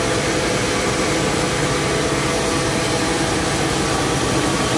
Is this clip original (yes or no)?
yes